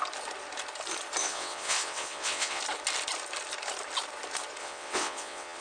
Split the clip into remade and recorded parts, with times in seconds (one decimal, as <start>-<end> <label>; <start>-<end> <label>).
0.0-1.2 recorded; 1.2-2.6 remade; 2.6-4.6 recorded; 4.6-5.6 remade